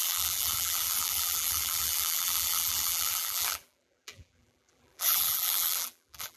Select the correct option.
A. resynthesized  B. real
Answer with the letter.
A